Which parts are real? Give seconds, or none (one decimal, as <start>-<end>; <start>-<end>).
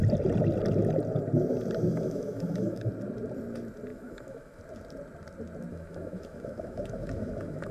0.0-1.9; 2.9-3.9; 4.6-5.7